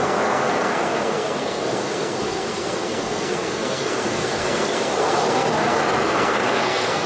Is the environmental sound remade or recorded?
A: remade